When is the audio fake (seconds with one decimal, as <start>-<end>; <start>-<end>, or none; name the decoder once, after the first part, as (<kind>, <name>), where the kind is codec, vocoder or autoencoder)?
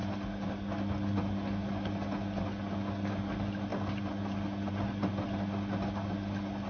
none